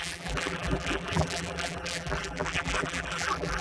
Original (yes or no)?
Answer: no